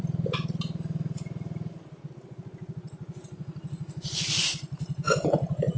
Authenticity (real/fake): real